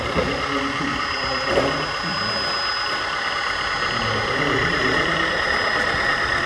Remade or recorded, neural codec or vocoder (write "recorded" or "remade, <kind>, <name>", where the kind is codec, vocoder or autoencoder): recorded